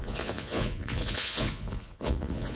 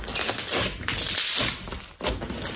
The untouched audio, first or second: second